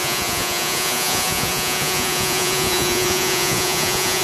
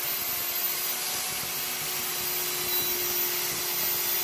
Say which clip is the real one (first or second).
second